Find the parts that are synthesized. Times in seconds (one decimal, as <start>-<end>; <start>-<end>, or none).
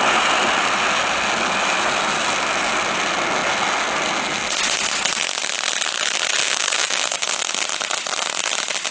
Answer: 6.4-7.3